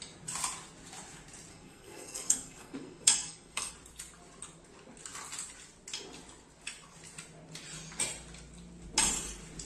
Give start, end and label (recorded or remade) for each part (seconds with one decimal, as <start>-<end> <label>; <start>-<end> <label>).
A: 0.0-1.5 recorded; 1.5-3.7 remade; 3.7-9.7 recorded

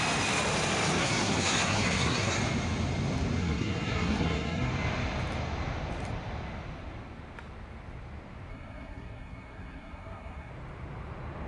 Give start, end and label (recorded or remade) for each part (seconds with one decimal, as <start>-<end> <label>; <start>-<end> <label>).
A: 0.0-1.0 recorded; 1.0-2.4 remade; 2.4-3.4 recorded; 3.4-4.7 remade; 4.7-8.5 recorded; 8.5-10.5 remade; 10.5-11.5 recorded

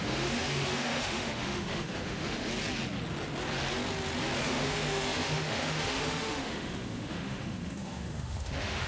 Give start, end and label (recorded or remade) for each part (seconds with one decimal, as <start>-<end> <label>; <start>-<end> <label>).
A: 0.0-2.5 remade; 2.5-4.4 recorded; 4.4-8.9 remade